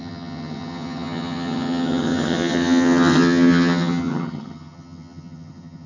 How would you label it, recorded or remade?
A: remade